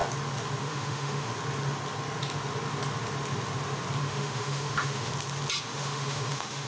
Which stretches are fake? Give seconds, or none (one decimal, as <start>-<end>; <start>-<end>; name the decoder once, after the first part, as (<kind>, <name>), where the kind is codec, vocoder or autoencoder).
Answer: 0.6-1.3 (autoencoder, DAC-VAE); 4.0-5.1; 5.6-6.7